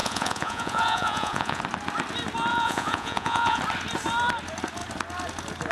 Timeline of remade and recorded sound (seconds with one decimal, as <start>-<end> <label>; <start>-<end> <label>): 0.0-1.6 remade; 1.6-2.5 recorded; 2.5-3.6 remade; 3.6-5.7 recorded